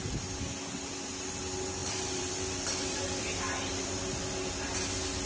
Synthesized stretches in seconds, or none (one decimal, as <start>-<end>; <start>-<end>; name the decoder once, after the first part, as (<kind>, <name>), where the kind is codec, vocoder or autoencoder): 1.8-4.0 (vocoder, BigVGAN v2)

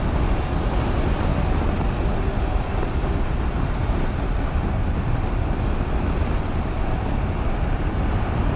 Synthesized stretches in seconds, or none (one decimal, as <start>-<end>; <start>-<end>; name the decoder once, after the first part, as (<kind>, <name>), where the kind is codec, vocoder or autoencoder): none

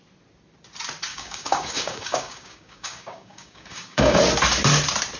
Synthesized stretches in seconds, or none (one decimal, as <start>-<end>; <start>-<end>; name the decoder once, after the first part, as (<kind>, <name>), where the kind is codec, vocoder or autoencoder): 1.1-4.2 (codec, DAC)

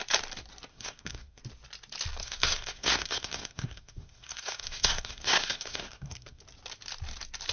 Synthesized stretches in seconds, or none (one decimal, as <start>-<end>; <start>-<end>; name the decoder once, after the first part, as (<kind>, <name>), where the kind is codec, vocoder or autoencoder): 0.7-1.4 (codec, SNAC); 2.2-6.4

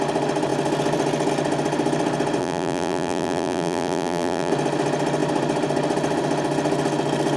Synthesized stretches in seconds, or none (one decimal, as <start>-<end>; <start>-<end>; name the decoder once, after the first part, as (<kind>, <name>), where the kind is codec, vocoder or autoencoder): 2.4-4.5 (vocoder, BigVGAN v2)

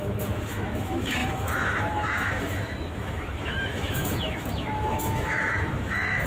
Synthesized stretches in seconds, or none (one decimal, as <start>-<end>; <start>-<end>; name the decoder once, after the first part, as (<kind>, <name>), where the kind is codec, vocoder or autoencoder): 0.0-6.3 (autoencoder, DAC-VAE)

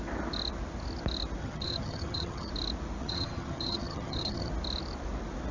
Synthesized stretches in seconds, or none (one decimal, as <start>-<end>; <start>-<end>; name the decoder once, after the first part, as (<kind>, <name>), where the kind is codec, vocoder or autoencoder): 1.4-2.5 (vocoder, HiFi-GAN); 3.0-4.5